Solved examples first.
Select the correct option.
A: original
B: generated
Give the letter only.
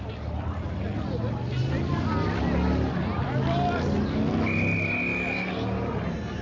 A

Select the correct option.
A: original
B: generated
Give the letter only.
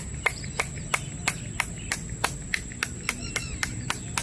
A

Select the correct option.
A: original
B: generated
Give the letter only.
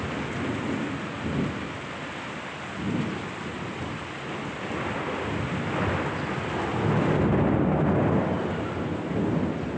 A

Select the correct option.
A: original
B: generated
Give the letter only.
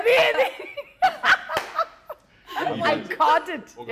A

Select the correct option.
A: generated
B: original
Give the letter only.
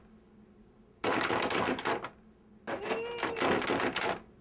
B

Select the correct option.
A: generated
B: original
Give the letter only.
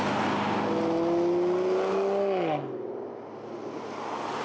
B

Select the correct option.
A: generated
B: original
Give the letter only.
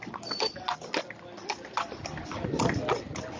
B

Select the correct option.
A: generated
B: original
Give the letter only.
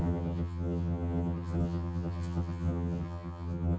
A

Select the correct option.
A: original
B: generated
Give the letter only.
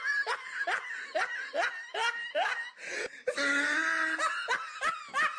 A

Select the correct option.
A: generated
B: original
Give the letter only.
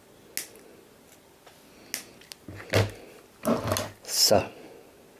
B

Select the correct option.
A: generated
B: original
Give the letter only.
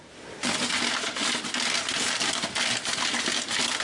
B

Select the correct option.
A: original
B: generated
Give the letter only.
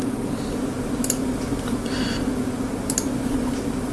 A